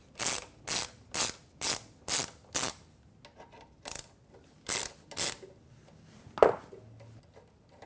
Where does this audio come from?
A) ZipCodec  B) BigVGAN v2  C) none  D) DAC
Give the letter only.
C